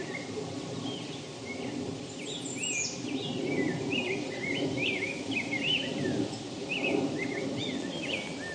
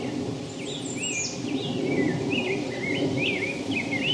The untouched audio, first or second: second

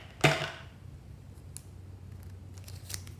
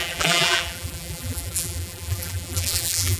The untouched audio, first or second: first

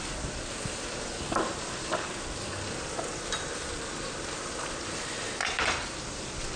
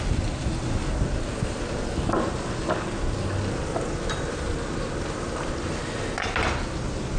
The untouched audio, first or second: second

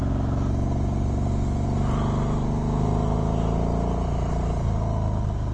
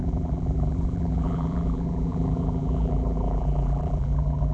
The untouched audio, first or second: first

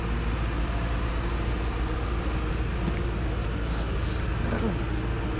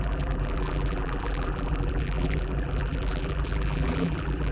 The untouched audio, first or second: first